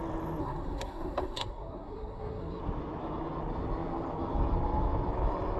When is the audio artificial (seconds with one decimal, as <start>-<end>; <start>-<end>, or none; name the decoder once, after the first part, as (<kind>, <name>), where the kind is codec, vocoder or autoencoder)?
0.4-2.6 (codec, SNAC)